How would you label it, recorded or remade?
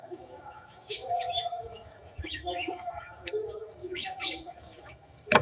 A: remade